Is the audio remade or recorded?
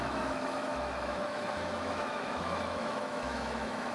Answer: remade